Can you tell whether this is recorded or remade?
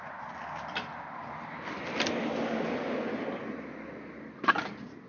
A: recorded